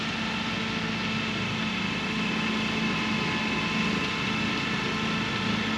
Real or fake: real